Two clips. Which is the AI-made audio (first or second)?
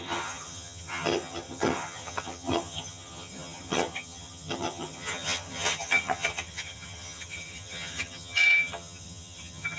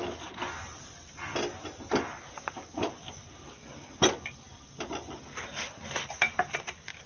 first